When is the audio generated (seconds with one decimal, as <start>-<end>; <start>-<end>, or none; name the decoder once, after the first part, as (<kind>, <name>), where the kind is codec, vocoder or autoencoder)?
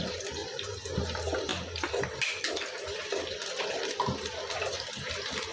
0.0-5.5 (vocoder, BigVGAN v2)